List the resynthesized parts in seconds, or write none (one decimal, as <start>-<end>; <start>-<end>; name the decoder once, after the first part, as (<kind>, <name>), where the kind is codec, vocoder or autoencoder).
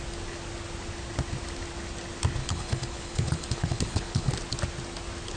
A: 2.4-4.3 (codec, HILCodec)